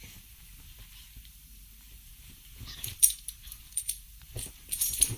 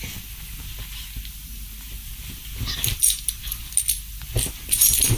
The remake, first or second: first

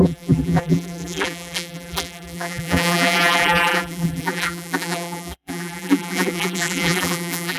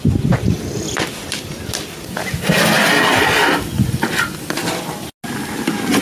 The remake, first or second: first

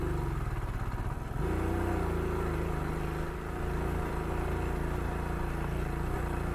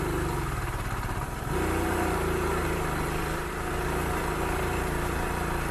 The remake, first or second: second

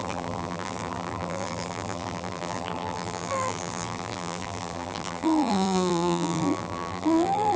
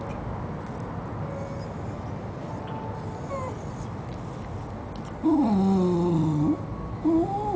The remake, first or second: first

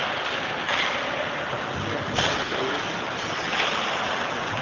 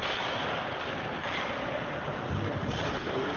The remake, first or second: second